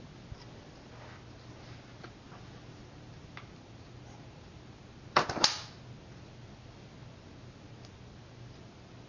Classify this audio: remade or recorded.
recorded